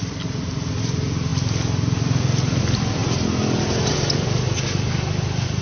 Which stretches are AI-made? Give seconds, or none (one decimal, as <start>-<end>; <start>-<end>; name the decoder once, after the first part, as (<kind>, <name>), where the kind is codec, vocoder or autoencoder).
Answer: 0.0-3.0 (vocoder, BigVGAN v2); 3.9-5.6

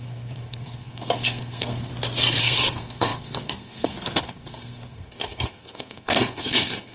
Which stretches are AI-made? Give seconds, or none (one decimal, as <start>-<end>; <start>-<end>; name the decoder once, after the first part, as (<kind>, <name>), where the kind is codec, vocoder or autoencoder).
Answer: 0.0-1.9 (codec, SNAC); 2.4-6.9

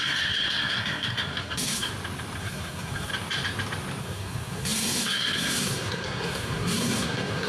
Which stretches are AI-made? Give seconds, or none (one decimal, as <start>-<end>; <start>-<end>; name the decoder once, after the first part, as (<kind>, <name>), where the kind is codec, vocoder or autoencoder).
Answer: 0.0-1.9 (codec, SNAC); 2.4-3.1; 4.0-7.5

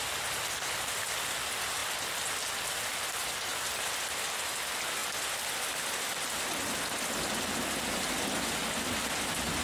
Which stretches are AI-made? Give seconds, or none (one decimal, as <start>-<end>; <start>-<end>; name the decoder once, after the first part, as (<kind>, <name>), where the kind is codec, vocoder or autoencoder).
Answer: none

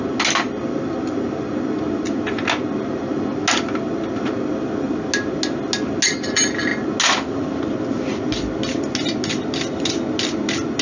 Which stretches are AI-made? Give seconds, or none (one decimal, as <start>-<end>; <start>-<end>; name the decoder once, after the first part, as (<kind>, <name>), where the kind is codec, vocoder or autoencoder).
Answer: none

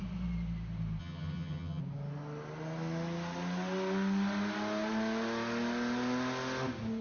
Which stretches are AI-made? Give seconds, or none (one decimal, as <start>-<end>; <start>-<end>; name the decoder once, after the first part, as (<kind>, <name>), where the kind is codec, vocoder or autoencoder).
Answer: 1.0-1.8 (vocoder, HiFi-GAN)

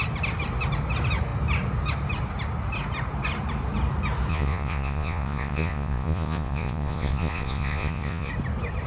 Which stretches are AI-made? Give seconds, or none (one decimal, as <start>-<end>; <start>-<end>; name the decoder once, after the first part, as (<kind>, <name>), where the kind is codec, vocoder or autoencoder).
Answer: 4.3-8.3 (vocoder, Vocos)

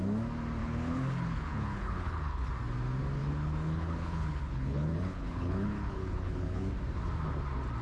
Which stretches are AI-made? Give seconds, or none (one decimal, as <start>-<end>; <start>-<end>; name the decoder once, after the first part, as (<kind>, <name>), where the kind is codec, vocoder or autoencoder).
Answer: 0.6-2.5 (codec, HILCodec); 3.2-6.7